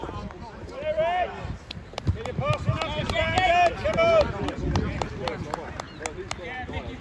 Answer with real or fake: real